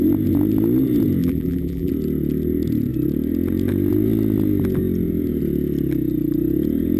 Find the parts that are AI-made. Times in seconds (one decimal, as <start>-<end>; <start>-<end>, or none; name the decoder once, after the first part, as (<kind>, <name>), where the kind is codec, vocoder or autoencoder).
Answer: 1.2-1.9 (vocoder, BigVGAN v2)